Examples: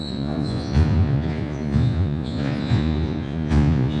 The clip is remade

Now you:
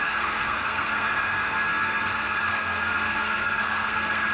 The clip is remade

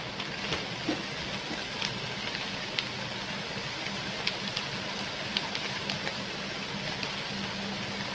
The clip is recorded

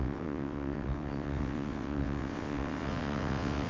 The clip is remade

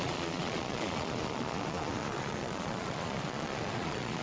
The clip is remade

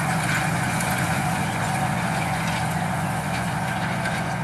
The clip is remade